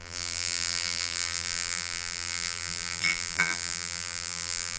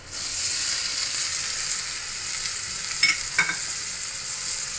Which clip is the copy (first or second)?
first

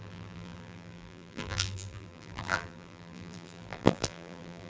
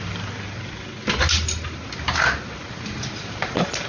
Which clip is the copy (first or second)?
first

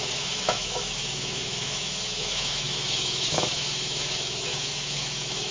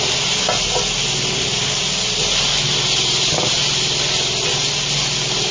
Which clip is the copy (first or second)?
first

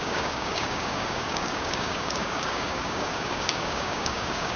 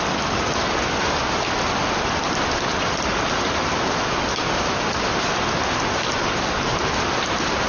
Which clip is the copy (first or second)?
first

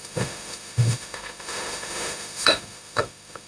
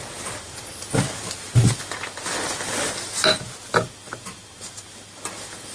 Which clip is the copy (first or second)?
first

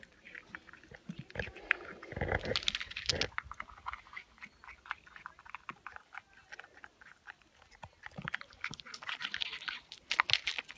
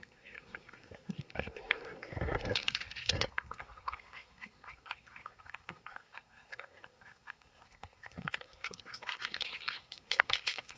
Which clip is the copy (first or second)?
second